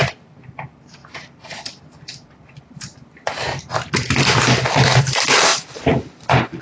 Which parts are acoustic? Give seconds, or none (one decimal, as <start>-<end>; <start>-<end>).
none